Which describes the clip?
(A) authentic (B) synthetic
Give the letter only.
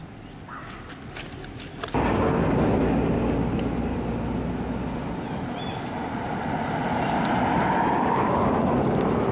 A